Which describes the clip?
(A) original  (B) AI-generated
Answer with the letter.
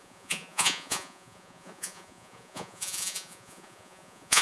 B